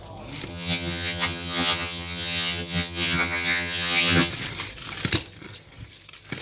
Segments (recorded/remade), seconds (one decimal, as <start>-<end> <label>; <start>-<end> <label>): 0.0-0.5 recorded; 0.5-4.3 remade; 4.3-6.4 recorded